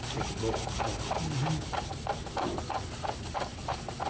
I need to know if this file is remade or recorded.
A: recorded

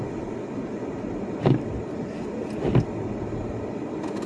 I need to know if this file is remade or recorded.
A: recorded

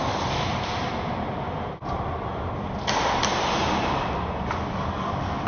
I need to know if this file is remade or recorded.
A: recorded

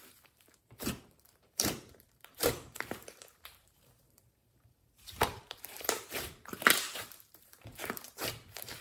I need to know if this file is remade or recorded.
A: remade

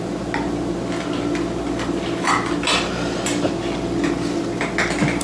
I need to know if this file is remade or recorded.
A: recorded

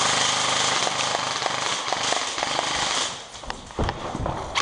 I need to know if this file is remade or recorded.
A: recorded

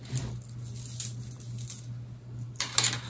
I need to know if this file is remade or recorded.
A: recorded